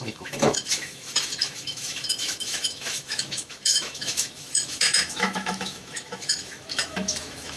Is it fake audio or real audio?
fake